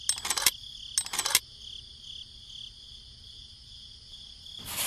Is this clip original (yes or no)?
yes